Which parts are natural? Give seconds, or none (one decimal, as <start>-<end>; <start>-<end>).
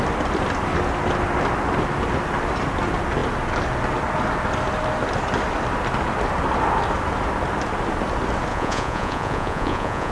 0.0-8.5